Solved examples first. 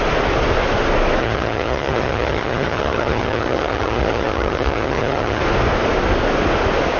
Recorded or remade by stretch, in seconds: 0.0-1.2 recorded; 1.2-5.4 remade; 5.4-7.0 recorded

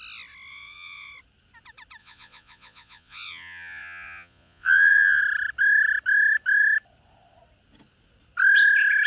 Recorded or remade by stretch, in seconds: 0.0-0.5 recorded; 0.5-1.1 remade; 1.1-2.0 recorded; 2.0-5.2 remade; 5.2-9.1 recorded

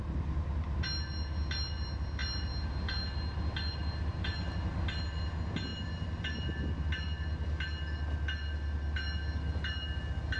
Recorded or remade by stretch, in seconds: 0.0-10.4 recorded

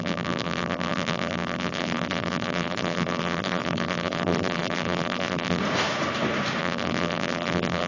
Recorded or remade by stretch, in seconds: 0.0-5.6 remade; 5.6-6.6 recorded; 6.6-7.9 remade

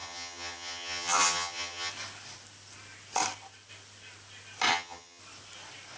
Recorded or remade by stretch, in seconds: 0.0-1.9 remade; 1.9-4.7 recorded; 4.7-5.2 remade; 5.2-6.0 recorded